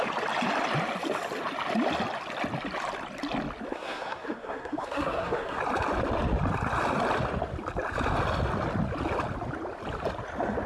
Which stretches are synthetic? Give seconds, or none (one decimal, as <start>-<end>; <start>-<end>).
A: 3.7-5.6